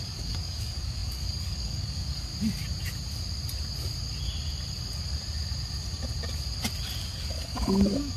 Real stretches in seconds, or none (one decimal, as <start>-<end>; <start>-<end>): 2.3-7.0